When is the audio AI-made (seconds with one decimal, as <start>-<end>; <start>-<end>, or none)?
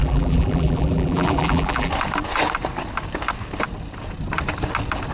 0.0-1.9